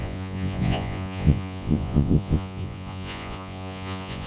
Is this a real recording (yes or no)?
no